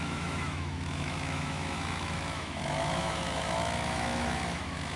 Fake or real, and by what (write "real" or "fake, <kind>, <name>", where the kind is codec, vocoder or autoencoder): fake, autoencoder, DAC-VAE